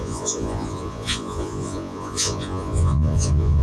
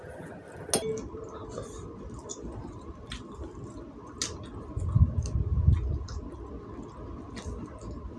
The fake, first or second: first